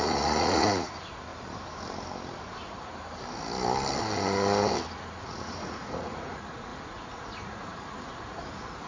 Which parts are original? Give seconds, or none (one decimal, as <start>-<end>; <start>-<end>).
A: 1.3-5.2